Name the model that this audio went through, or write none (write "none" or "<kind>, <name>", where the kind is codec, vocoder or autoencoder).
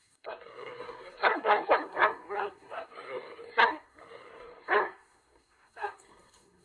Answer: codec, SNAC